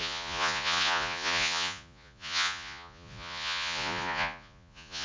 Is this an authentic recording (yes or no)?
no